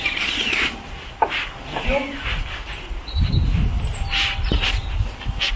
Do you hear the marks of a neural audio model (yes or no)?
no